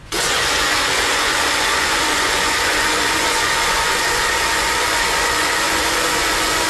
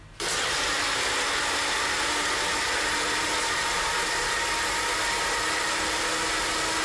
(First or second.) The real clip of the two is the second